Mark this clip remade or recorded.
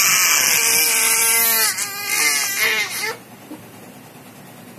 recorded